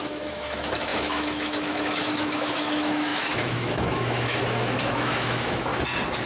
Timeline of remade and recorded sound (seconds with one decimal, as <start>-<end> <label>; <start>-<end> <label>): 0.0-5.7 remade; 5.7-6.3 recorded